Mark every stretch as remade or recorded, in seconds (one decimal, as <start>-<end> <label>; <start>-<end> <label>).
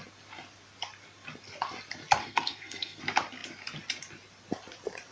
0.0-2.2 recorded; 2.2-3.0 remade; 3.0-5.1 recorded